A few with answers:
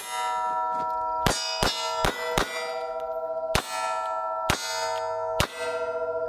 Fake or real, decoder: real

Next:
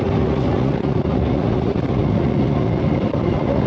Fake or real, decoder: fake, vocoder, Vocos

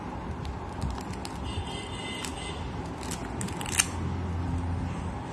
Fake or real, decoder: real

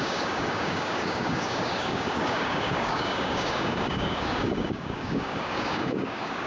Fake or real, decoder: fake, codec, DAC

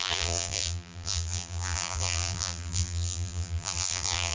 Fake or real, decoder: fake, vocoder, BigVGAN v2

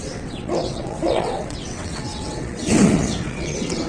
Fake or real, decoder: fake, vocoder, WaveNeXt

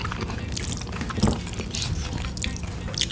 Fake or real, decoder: real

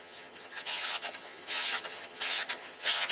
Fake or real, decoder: fake, vocoder, HiFi-GAN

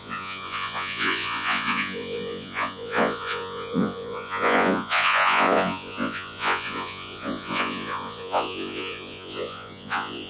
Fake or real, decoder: fake, vocoder, Vocos